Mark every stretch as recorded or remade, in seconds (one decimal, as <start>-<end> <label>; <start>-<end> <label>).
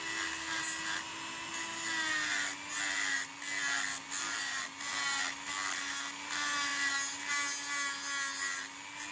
0.0-9.1 recorded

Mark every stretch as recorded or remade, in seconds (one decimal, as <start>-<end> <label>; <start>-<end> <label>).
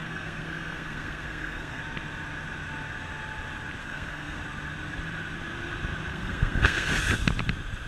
0.0-1.8 remade; 1.8-3.8 recorded; 3.8-4.4 remade; 4.4-6.1 recorded; 6.1-6.9 remade; 6.9-7.9 recorded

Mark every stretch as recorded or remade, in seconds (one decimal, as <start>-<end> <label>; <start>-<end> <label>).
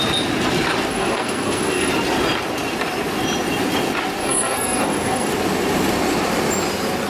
0.0-0.9 recorded; 0.9-1.9 remade; 1.9-4.2 recorded; 4.2-5.3 remade; 5.3-7.1 recorded